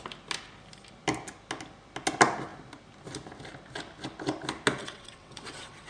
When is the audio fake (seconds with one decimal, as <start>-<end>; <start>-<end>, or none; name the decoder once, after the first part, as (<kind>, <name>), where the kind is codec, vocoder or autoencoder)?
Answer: 4.8-5.9 (vocoder, WaveNeXt)

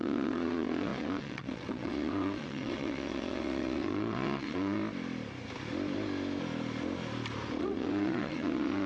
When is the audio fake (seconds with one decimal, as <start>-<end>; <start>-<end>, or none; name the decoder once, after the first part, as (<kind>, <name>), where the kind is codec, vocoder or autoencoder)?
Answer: 0.0-4.8 (vocoder, WaveNeXt); 7.6-8.9

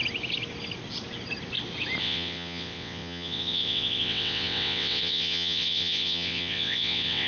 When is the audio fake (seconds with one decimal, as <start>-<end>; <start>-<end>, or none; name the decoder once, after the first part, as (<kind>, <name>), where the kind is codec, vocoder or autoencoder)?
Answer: 2.0-7.3 (vocoder, WaveNeXt)

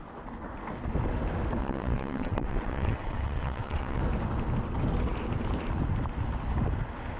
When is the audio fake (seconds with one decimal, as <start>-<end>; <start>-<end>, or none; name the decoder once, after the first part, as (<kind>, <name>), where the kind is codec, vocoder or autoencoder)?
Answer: 1.6-4.0 (vocoder, WaveNeXt)